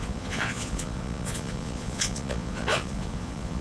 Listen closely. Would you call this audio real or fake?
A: fake